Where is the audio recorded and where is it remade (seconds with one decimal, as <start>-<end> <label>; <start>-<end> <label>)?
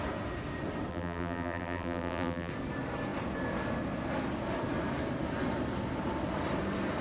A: 0.0-0.9 recorded; 0.9-2.5 remade; 2.5-7.0 recorded